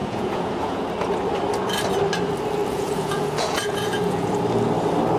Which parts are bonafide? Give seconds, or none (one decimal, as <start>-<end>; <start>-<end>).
0.8-2.6; 4.4-5.2